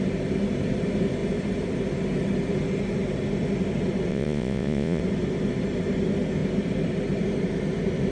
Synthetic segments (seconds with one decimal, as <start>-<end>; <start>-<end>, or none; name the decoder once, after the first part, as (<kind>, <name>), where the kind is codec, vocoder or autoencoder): 4.1-5.0 (vocoder, Vocos)